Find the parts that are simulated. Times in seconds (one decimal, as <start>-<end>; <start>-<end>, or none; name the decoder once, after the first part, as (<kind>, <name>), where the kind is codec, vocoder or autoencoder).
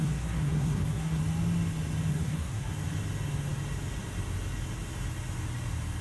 0.0-1.2 (codec, SNAC); 2.1-2.7